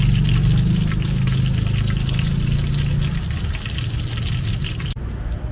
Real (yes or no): yes